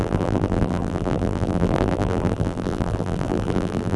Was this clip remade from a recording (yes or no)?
yes